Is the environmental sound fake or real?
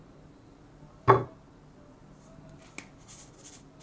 real